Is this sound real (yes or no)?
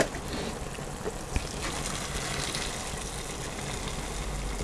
yes